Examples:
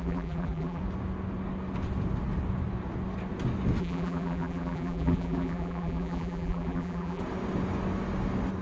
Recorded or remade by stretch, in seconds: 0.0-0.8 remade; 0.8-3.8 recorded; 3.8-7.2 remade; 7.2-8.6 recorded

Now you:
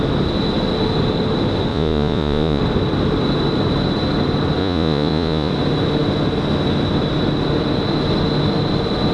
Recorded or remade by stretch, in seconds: 0.0-1.7 recorded; 1.7-2.6 remade; 2.6-4.6 recorded; 4.6-5.5 remade; 5.5-9.1 recorded